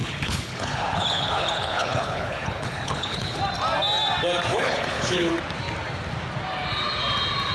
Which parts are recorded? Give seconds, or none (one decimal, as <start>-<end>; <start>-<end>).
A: 3.4-4.5; 5.3-7.5